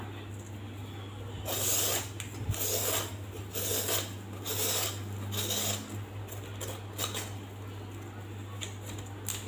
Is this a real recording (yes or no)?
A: yes